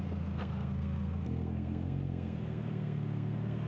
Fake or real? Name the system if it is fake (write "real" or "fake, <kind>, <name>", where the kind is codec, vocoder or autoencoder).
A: fake, codec, SNAC